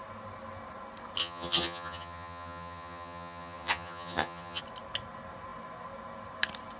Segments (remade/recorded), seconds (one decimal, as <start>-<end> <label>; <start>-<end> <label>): 0.0-1.2 recorded; 1.2-4.6 remade; 4.6-6.8 recorded